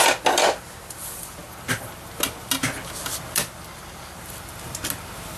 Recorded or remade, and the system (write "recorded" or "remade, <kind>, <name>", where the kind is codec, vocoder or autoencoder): recorded